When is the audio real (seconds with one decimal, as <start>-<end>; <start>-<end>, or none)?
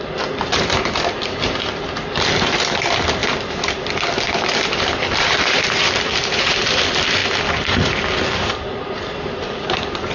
7.2-8.0